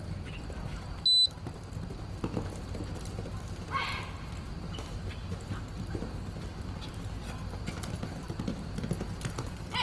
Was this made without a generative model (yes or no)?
yes